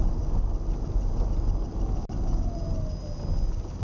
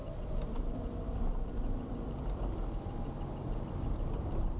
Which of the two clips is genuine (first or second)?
first